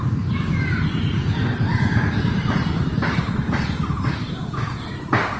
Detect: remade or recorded remade